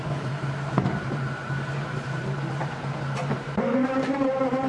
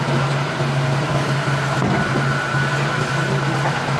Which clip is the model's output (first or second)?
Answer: first